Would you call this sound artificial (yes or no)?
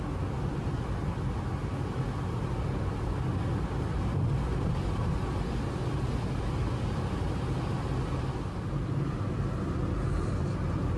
no